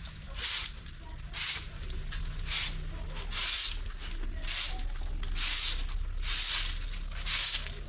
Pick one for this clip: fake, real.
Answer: real